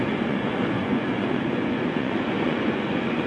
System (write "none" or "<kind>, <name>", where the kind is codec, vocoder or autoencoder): vocoder, Vocos